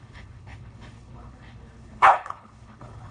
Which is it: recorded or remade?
remade